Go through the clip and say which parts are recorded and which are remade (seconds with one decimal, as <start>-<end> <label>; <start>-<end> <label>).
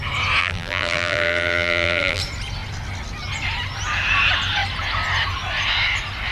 0.0-0.4 recorded; 0.4-2.2 remade; 2.2-6.3 recorded